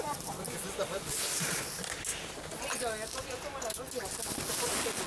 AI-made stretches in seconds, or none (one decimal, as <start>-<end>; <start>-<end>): none